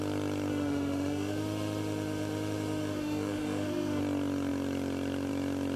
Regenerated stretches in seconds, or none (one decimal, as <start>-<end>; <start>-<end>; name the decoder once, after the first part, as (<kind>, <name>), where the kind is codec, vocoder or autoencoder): 0.5-4.0 (autoencoder, DAC-VAE)